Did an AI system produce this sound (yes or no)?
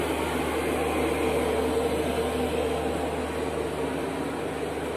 no